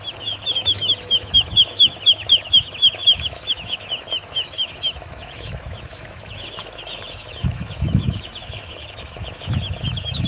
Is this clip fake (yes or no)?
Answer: yes